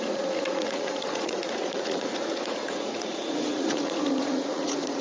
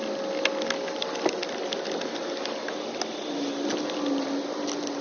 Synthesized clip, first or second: first